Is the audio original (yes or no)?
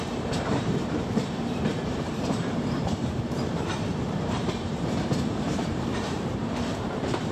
no